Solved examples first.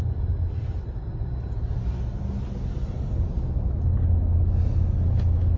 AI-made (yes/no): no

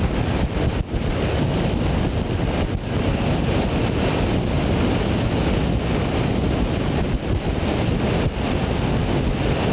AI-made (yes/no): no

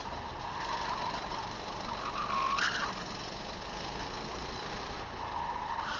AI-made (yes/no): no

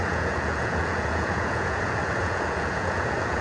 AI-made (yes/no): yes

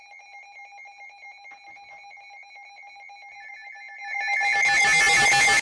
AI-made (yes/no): no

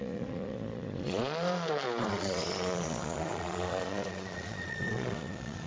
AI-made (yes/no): yes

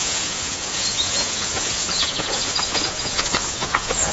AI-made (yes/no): yes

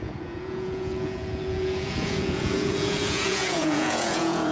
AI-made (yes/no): yes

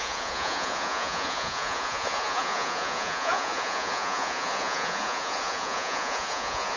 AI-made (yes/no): yes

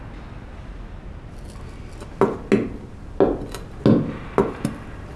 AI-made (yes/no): no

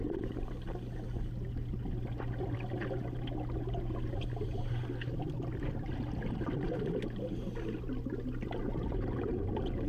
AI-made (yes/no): no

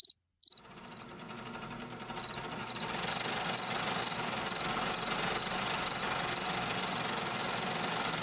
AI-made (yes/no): no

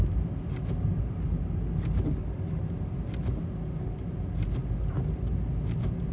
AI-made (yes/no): no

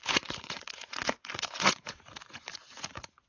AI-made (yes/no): yes